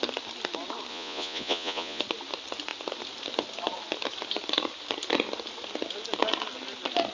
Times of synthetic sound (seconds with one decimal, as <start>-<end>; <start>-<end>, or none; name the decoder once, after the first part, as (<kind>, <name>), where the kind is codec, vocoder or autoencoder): 0.9-2.0 (vocoder, Vocos)